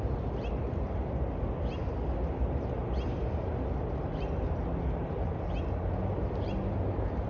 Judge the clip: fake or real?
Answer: real